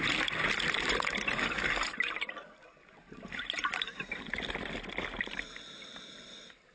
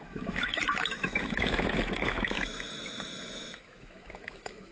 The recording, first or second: first